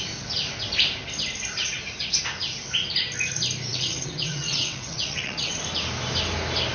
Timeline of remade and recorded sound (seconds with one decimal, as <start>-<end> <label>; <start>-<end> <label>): 0.0-3.7 recorded; 3.7-5.6 remade; 5.6-6.7 recorded